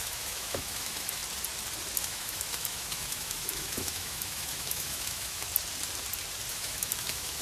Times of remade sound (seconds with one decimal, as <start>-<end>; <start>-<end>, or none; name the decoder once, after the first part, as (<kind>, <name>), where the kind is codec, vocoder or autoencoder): 0.0-1.2 (autoencoder, DAC-VAE); 2.0-5.5; 6.5-7.4